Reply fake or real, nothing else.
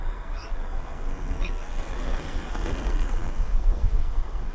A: fake